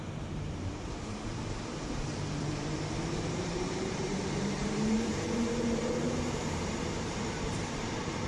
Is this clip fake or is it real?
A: fake